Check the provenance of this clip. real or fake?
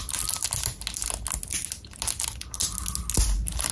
real